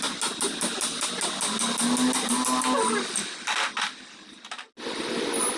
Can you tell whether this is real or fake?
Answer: real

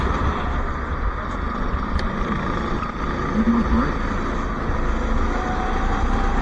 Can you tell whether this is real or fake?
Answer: real